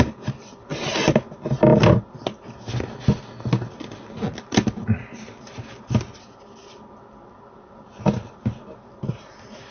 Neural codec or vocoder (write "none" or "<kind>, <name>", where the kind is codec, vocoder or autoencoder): none